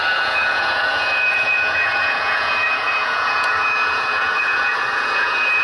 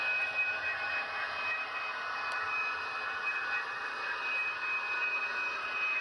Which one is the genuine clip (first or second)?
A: second